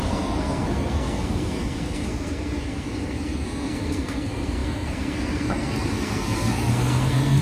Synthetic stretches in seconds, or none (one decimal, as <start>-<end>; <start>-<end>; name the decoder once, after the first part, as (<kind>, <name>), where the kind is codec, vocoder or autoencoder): 0.0-7.4 (codec, SNAC)